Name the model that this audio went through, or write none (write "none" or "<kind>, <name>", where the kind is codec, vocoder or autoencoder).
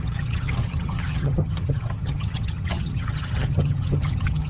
vocoder, HiFi-GAN